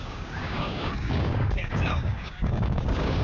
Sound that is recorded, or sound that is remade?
remade